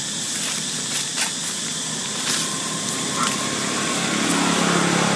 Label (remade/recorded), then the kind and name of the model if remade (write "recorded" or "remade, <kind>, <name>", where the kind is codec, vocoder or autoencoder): recorded